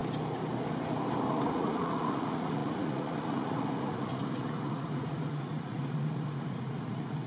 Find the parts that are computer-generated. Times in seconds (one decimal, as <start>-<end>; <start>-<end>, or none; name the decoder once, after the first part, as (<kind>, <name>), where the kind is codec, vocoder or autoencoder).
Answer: 1.3-7.3 (vocoder, Vocos)